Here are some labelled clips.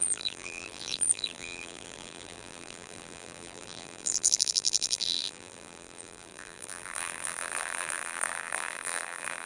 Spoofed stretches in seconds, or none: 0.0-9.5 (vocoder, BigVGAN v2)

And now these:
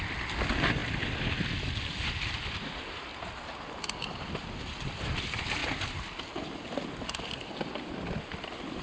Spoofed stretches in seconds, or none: 0.0-0.8 (vocoder, BigVGAN v2); 2.0-3.1; 4.0-5.6; 6.8-8.8

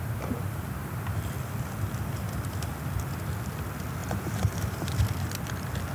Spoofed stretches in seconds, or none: 4.0-5.0 (vocoder, BigVGAN v2)

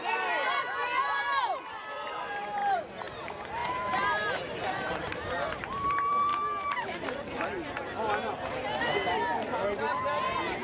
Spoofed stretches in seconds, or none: 0.0-3.6 (vocoder, BigVGAN v2); 4.7-6.3; 8.8-10.6

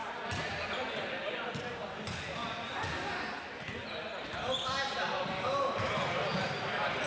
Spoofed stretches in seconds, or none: 0.8-2.4 (vocoder, BigVGAN v2); 6.4-7.1

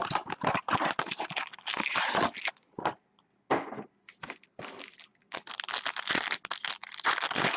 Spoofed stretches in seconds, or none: 0.0-3.0 (vocoder, BigVGAN v2); 6.8-7.6

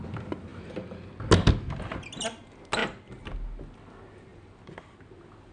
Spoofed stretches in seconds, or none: none

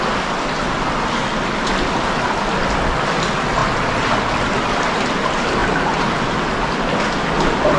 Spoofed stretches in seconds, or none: 5.6-6.5 (vocoder, BigVGAN v2)